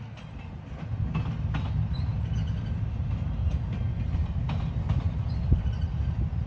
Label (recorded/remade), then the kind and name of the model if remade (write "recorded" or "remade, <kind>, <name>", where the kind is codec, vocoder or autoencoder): recorded